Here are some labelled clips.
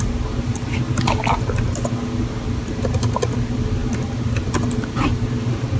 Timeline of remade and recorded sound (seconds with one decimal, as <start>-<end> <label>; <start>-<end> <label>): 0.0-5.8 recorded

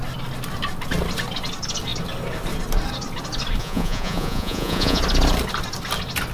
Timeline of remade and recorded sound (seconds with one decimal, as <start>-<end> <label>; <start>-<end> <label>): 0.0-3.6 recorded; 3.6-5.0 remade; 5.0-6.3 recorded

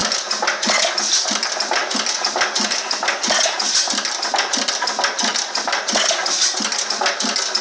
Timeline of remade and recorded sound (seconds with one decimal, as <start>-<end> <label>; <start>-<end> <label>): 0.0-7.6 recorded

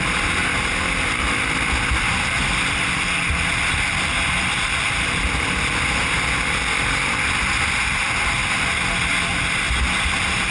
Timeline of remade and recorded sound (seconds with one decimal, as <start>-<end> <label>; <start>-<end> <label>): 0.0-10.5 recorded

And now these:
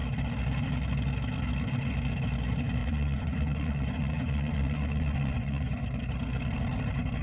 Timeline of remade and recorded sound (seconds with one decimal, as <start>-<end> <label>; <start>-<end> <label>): 0.0-2.8 recorded; 2.8-5.8 remade; 5.8-7.2 recorded